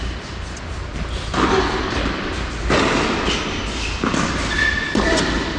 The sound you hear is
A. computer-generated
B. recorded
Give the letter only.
B